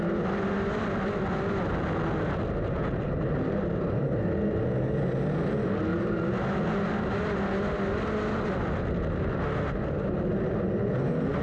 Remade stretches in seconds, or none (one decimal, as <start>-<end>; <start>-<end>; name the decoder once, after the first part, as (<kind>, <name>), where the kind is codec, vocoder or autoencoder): none